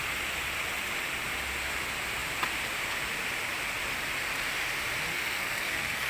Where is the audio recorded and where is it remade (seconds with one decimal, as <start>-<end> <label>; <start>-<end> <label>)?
0.0-5.1 recorded; 5.1-6.1 remade